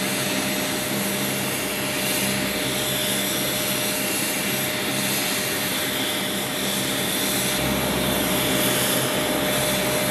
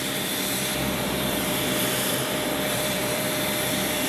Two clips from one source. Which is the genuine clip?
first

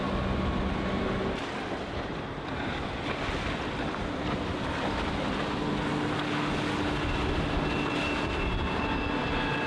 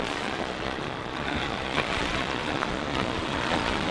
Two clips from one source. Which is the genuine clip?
first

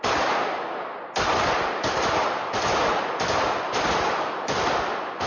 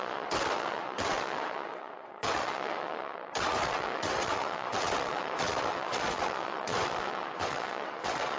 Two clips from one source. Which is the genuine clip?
first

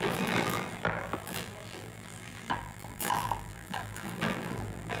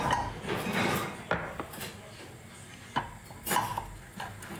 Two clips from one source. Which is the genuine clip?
second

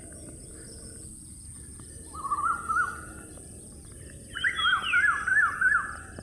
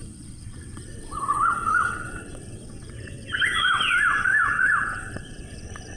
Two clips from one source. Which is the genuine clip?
first